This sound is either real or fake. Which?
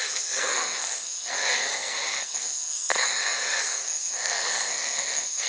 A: fake